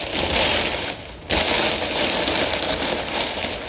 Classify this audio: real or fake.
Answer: real